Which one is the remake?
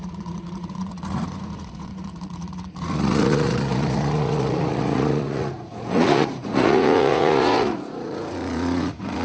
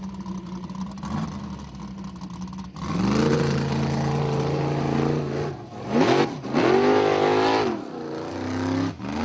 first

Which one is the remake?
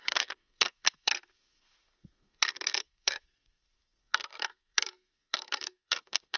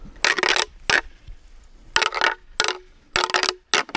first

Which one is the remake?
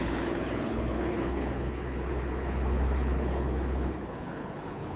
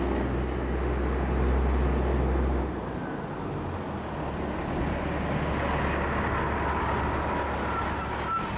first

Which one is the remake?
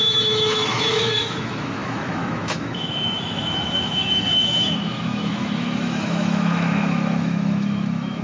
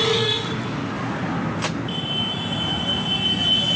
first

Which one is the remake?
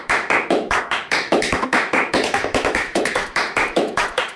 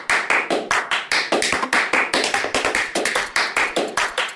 first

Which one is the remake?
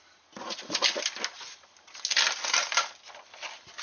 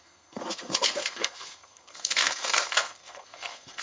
second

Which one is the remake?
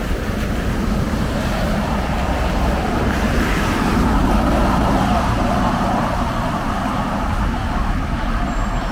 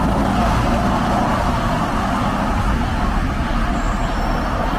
first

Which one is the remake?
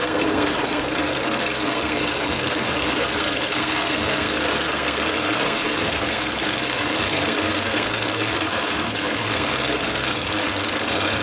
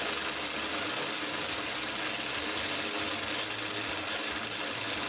first